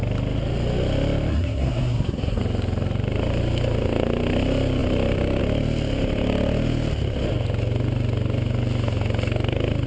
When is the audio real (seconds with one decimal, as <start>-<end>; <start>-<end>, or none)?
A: 0.0-1.3; 2.4-9.9